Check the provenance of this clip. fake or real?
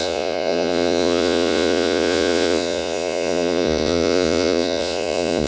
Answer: fake